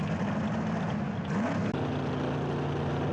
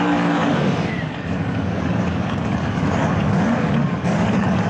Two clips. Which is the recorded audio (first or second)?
first